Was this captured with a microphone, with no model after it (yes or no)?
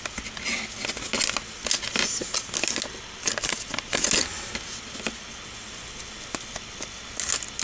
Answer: yes